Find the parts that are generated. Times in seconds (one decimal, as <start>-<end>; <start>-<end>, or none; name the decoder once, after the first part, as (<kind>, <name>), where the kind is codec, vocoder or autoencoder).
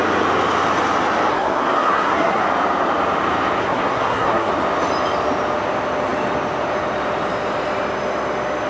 1.3-2.4 (codec, SNAC); 3.6-4.5